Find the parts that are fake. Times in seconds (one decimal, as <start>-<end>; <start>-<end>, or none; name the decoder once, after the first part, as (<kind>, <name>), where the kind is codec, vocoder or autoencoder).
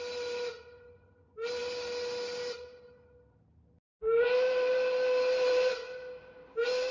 none